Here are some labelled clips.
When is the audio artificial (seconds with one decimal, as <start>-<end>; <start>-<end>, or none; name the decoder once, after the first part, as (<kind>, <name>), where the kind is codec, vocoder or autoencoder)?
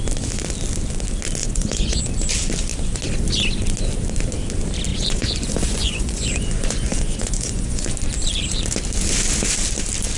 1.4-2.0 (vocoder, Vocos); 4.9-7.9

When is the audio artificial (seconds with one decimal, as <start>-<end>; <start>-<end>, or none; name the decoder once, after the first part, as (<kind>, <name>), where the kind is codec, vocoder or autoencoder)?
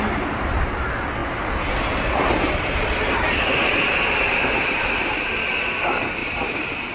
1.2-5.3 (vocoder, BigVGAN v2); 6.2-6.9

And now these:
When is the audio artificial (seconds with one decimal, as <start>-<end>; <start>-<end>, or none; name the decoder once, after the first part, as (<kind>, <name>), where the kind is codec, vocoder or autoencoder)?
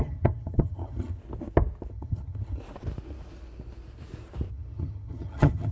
0.0-1.2 (vocoder, HiFi-GAN); 1.9-2.6; 4.5-5.7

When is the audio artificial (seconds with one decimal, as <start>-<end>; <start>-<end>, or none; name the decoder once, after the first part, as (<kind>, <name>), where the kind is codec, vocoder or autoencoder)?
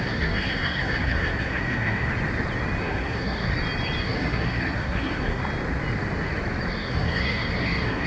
0.0-2.1 (codec, SNAC); 2.8-3.5; 4.0-5.4; 6.7-8.1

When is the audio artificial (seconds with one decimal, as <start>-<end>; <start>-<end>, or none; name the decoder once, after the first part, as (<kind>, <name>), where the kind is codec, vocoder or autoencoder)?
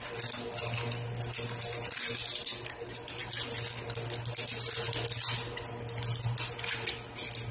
none